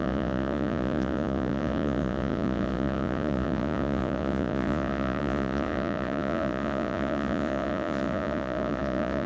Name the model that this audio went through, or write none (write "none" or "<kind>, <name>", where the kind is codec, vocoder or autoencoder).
vocoder, Vocos